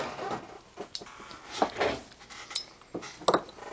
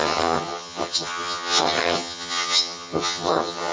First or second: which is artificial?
second